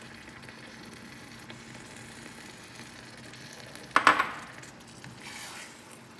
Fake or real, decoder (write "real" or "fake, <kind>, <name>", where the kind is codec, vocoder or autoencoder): real